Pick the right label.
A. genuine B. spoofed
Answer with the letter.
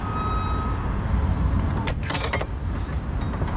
A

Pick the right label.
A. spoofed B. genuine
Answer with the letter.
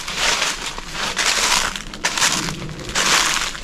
B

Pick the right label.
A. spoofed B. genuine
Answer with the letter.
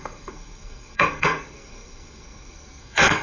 A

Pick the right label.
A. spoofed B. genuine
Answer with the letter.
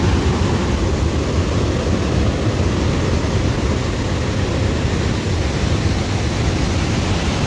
B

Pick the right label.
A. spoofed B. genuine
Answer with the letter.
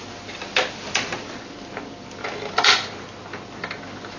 B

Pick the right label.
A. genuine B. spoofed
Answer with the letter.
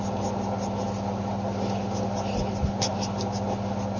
A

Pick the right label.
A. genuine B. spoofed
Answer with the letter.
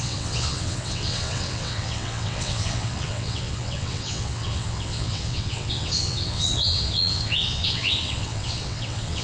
B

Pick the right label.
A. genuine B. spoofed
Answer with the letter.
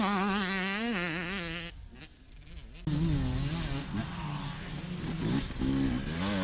A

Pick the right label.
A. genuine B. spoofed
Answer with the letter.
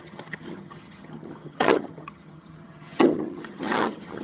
B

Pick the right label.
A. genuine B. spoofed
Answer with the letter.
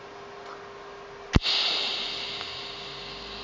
A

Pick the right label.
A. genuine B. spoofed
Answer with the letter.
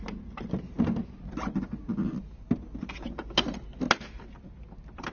A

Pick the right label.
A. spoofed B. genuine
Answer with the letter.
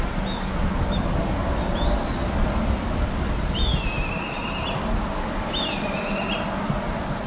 B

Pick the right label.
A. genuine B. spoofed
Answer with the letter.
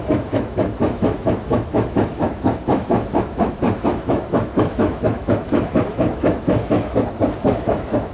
B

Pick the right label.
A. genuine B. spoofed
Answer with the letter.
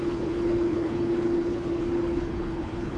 B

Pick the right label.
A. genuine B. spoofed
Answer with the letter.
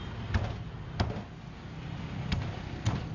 A